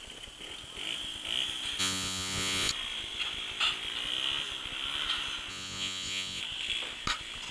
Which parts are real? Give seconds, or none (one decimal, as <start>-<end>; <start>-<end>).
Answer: 0.0-1.8; 2.7-5.5; 6.4-7.5

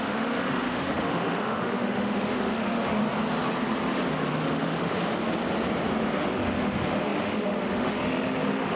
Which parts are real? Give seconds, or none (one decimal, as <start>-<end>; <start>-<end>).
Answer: 3.0-4.3; 5.2-6.3

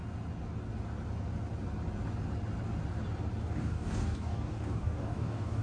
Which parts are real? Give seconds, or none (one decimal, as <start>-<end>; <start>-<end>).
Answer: 0.0-3.4

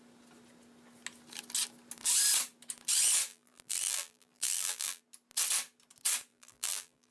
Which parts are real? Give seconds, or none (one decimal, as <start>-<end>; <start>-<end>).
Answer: 0.0-3.3; 5.0-6.3

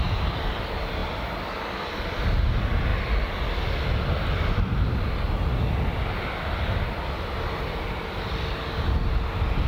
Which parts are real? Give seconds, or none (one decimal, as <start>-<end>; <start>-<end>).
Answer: 0.0-9.7